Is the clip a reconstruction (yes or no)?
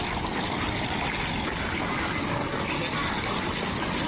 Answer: no